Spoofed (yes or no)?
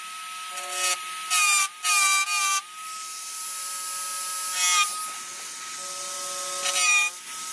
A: no